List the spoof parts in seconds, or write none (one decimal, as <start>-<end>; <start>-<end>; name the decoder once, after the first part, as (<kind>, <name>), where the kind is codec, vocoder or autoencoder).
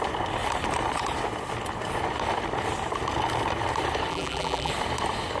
4.1-4.7 (vocoder, BigVGAN v2)